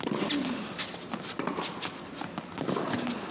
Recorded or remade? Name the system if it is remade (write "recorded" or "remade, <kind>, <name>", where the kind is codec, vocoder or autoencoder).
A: recorded